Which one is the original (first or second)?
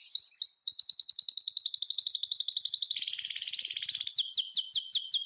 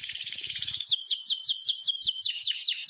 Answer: first